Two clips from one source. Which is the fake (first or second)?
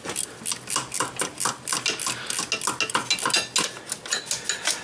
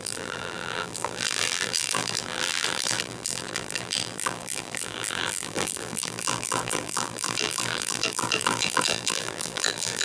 second